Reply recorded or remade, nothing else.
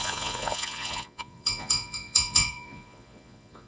remade